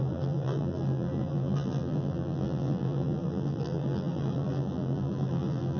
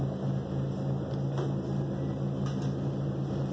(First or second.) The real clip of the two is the second